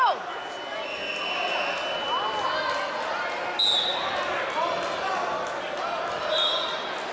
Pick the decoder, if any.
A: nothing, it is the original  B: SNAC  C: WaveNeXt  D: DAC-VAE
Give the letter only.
A